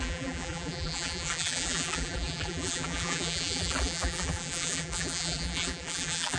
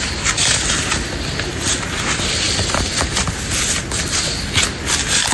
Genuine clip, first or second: second